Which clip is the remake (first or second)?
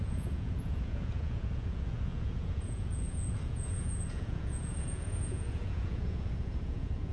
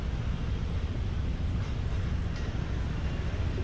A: first